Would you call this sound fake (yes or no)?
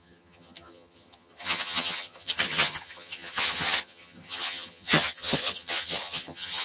yes